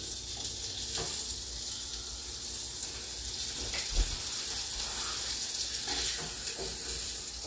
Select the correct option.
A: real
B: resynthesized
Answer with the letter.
A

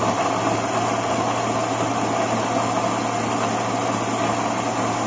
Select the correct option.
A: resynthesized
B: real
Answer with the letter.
B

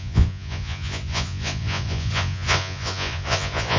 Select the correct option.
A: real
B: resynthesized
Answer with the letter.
B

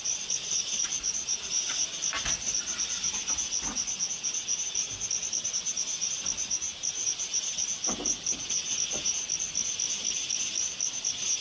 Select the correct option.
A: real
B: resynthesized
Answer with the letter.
A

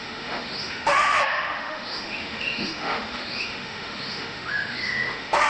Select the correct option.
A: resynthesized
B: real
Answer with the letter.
A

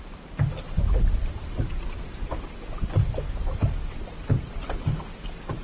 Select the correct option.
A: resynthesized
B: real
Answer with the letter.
B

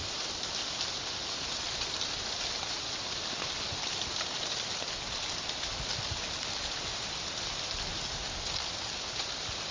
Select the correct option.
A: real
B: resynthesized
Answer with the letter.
A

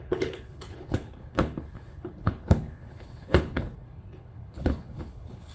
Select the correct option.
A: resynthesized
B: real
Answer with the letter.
A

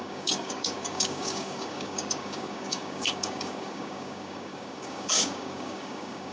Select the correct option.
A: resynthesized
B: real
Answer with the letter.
A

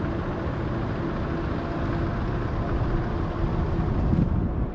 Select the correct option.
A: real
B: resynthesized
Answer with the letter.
A